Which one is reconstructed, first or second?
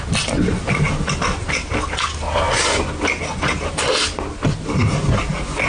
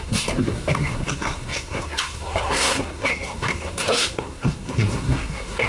second